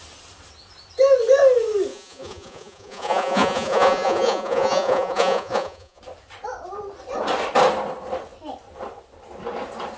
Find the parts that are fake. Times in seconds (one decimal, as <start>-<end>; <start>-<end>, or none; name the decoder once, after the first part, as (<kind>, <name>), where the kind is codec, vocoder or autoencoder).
1.9-6.0 (vocoder, Vocos)